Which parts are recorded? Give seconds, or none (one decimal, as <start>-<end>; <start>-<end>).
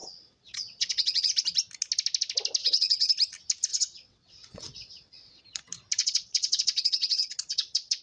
1.3-2.6; 3.1-3.7; 5.4-6.0